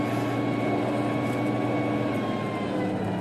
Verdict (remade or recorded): recorded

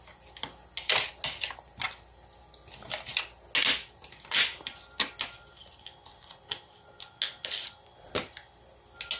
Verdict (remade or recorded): recorded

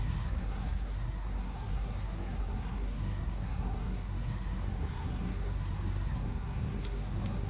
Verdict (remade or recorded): remade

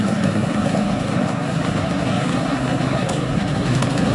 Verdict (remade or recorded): remade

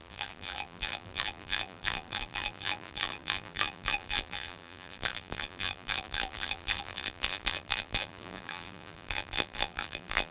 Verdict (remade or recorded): remade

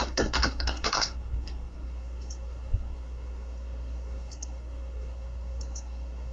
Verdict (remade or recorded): remade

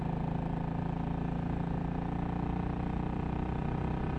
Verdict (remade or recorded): recorded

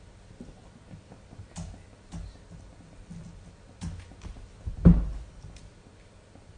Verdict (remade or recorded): recorded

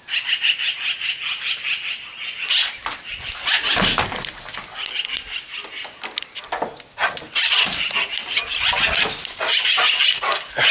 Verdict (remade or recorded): recorded